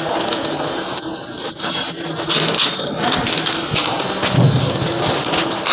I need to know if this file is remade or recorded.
recorded